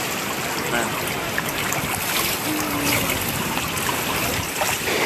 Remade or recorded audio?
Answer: recorded